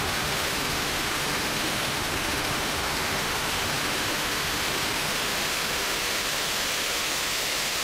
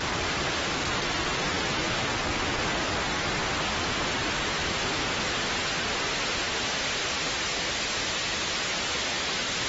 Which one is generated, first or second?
first